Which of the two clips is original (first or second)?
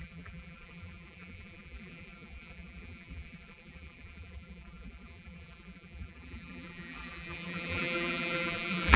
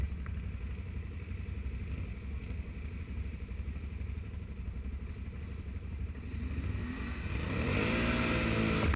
second